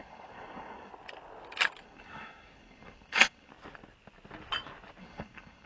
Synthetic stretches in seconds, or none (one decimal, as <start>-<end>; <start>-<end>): 0.0-0.9; 1.8-3.5; 5.0-5.7